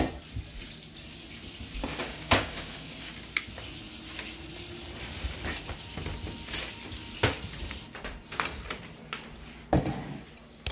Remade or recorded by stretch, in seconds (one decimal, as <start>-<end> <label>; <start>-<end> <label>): 0.0-1.9 recorded; 1.9-3.1 remade; 3.1-10.7 recorded